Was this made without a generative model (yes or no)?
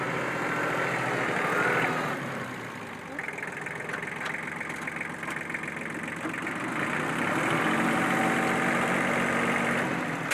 yes